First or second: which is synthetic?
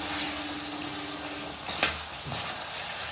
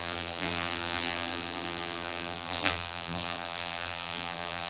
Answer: second